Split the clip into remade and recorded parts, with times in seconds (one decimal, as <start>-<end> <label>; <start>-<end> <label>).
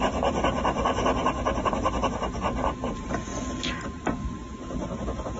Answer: 0.0-5.4 recorded